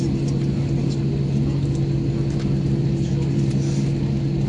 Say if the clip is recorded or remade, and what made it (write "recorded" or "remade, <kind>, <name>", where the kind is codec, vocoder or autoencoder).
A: recorded